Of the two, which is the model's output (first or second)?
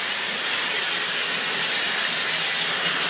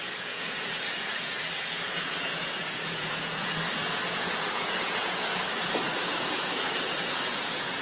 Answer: second